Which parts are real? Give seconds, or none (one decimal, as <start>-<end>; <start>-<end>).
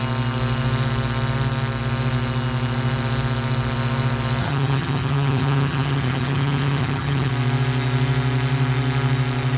0.0-4.4; 7.3-9.6